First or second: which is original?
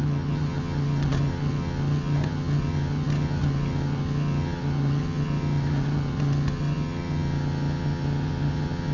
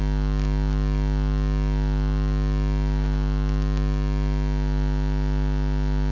second